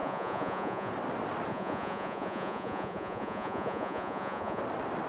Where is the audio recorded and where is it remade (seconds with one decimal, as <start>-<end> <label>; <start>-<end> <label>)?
0.0-0.9 remade; 0.9-1.5 recorded; 1.5-4.6 remade; 4.6-5.1 recorded